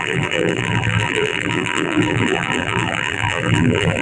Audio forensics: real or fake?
fake